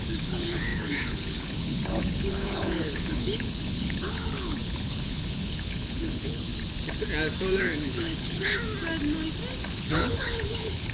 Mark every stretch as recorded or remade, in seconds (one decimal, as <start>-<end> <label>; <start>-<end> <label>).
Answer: 0.0-6.5 remade; 6.5-7.6 recorded; 7.6-8.6 remade; 8.6-9.8 recorded; 9.8-10.9 remade